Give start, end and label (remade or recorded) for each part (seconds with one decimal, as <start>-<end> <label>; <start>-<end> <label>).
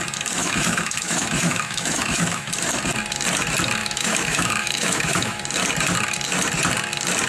0.0-0.4 recorded; 0.4-2.5 remade; 2.5-3.8 recorded; 3.8-5.4 remade; 5.4-7.3 recorded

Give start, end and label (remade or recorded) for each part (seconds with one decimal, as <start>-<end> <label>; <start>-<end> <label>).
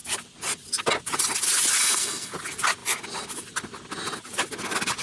0.0-1.8 recorded; 1.8-2.3 remade; 2.3-5.0 recorded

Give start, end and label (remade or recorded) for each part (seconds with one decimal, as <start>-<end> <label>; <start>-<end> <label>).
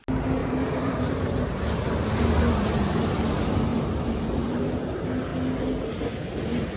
0.0-0.4 recorded; 0.4-2.2 remade; 2.2-3.7 recorded; 3.7-4.5 remade; 4.5-6.8 recorded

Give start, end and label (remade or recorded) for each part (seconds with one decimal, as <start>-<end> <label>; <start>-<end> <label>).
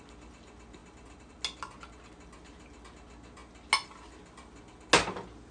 0.0-5.5 recorded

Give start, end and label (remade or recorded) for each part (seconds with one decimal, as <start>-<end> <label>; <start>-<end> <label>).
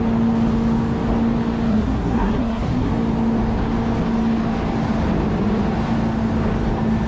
0.0-1.7 recorded; 1.7-2.9 remade; 2.9-7.1 recorded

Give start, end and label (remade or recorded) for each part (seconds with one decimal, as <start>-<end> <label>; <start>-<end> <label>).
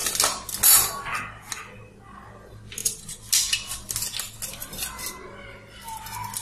0.0-6.4 recorded